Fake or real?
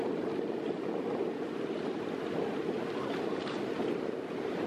real